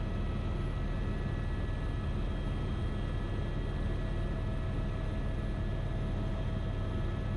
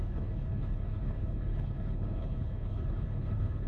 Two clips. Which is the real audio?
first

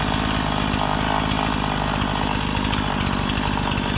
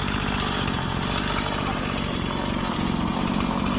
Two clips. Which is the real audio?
first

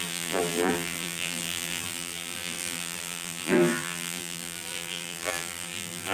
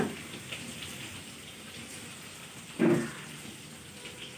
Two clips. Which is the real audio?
second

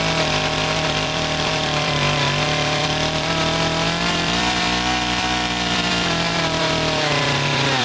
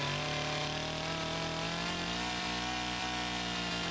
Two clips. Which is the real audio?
second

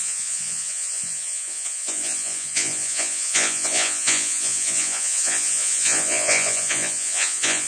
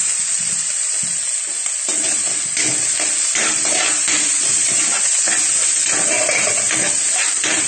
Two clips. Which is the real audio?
second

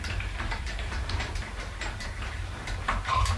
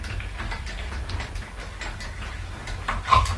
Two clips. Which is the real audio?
second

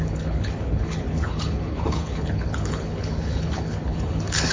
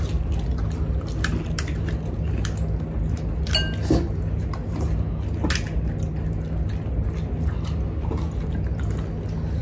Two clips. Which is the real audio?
second